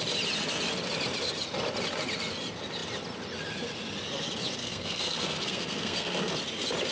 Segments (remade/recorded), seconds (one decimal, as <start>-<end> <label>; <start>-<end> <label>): 0.0-4.6 recorded; 4.6-6.3 remade; 6.3-6.9 recorded